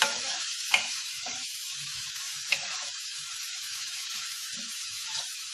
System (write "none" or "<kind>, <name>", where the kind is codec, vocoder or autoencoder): autoencoder, DAC-VAE